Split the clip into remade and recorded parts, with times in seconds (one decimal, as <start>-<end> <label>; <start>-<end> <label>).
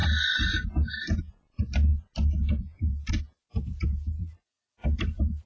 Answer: 0.0-4.2 recorded; 4.2-4.7 remade; 4.7-5.5 recorded